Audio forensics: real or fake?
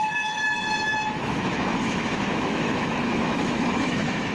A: fake